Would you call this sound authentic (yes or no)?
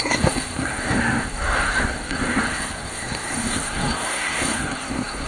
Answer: no